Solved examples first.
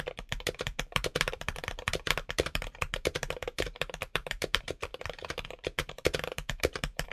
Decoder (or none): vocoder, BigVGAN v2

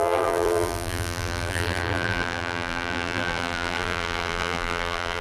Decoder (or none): vocoder, BigVGAN v2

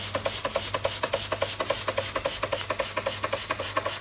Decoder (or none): none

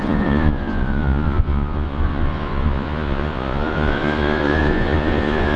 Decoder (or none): vocoder, Vocos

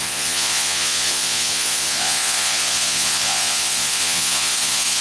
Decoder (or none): vocoder, Vocos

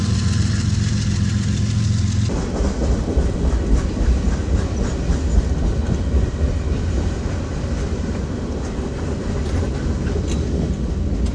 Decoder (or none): none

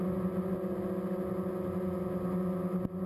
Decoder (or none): none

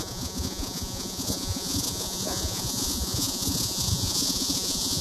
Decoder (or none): vocoder, Vocos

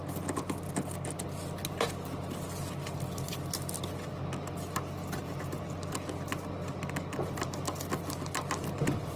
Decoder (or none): none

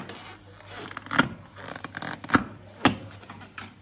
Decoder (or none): none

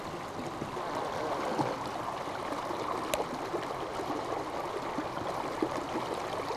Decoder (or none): none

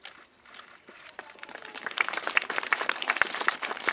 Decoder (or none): vocoder, BigVGAN v2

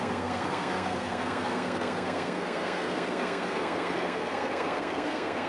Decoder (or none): codec, SNAC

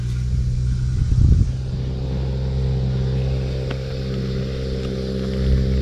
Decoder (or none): none